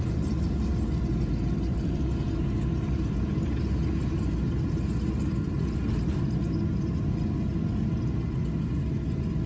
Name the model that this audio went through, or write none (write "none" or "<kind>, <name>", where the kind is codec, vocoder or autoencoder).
none